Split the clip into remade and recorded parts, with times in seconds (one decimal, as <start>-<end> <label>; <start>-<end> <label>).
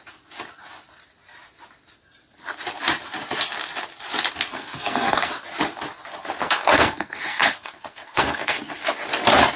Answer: 0.0-4.5 recorded; 4.5-5.3 remade; 5.3-6.4 recorded; 6.4-8.6 remade; 8.6-9.6 recorded